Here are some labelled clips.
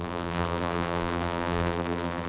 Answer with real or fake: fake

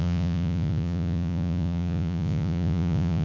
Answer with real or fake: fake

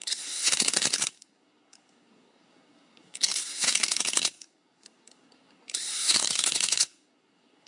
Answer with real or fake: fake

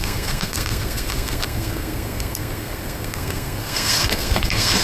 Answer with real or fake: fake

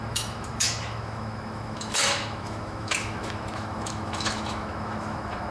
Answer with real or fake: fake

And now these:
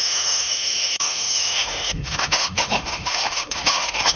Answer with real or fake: fake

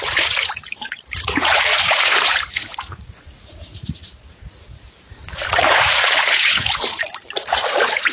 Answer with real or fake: fake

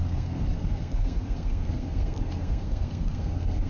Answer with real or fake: fake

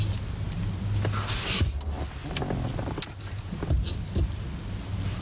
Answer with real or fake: real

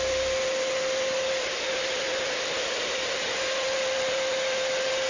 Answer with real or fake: real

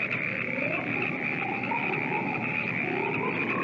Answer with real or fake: real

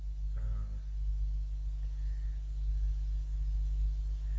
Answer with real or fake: real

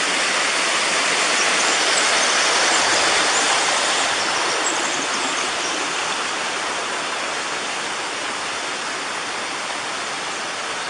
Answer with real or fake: real